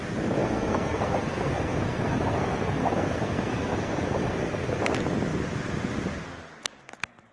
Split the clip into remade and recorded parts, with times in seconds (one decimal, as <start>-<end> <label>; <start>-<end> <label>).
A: 0.0-0.4 recorded; 0.4-4.8 remade; 4.8-7.3 recorded